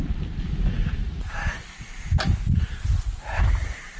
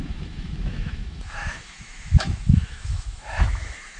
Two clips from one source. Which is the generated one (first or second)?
second